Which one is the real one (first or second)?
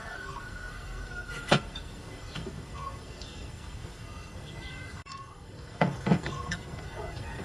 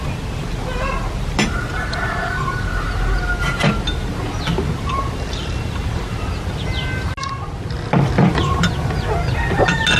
second